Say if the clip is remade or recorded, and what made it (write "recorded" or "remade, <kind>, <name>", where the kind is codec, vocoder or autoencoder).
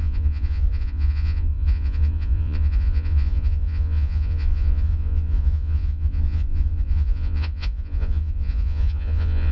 remade, vocoder, Vocos